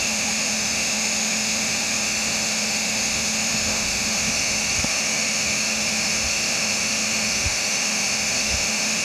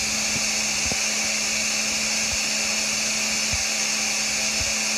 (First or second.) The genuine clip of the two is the second